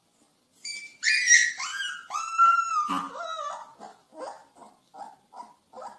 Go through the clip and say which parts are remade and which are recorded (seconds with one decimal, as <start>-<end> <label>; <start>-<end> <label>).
0.0-6.0 recorded